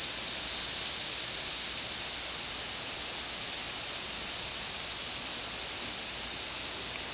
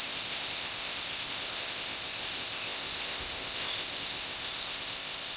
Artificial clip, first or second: second